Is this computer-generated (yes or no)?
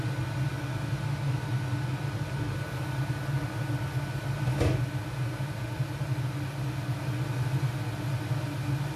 no